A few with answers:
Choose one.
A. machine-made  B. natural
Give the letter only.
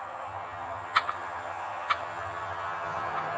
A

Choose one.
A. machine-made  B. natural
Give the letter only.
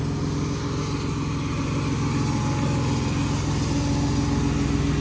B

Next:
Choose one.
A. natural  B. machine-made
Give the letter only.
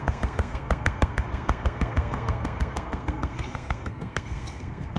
B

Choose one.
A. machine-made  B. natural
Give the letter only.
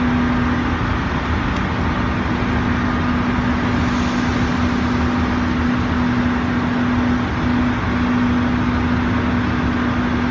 B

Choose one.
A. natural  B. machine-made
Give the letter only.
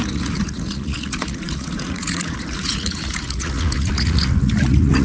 B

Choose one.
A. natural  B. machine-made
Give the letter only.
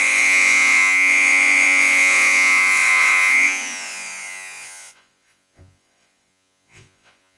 B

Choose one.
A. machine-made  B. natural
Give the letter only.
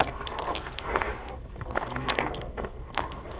A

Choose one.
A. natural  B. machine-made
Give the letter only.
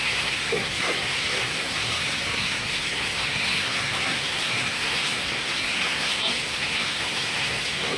B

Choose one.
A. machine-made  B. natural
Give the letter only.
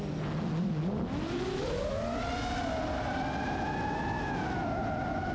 B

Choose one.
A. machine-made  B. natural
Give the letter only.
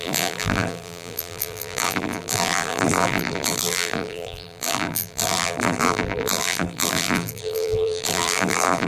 A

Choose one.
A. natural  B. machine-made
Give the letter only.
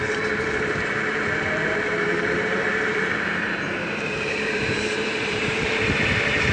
B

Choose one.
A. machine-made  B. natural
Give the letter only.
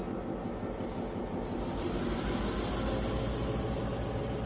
B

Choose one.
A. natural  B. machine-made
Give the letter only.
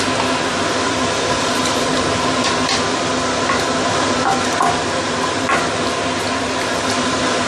A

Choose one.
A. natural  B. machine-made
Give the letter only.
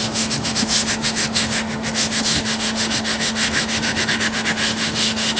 B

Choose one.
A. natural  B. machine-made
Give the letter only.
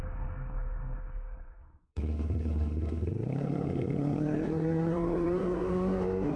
B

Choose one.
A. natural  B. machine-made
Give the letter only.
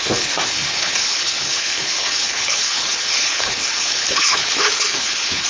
B